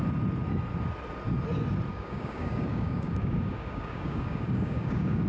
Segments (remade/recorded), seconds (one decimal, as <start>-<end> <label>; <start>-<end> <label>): 0.0-1.9 recorded; 1.9-5.3 remade